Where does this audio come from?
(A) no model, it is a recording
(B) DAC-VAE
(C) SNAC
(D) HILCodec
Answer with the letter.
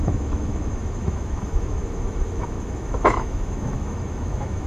B